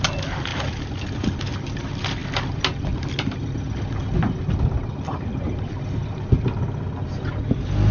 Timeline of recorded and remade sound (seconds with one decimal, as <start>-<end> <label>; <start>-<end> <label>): 0.0-7.9 recorded

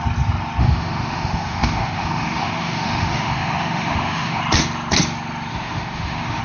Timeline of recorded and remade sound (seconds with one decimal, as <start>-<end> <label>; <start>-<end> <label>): 0.0-0.6 recorded; 0.6-4.4 remade; 4.4-5.5 recorded; 5.5-6.4 remade

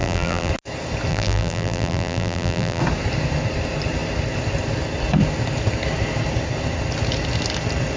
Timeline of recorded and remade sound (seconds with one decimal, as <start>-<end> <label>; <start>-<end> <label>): 0.0-0.5 remade; 0.5-1.1 recorded; 1.1-2.8 remade; 2.8-8.0 recorded

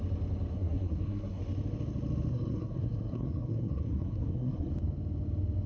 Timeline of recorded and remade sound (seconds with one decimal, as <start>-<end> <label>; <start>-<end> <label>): 0.0-0.5 recorded; 0.5-1.4 remade; 1.4-2.3 recorded; 2.3-4.7 remade; 4.7-5.7 recorded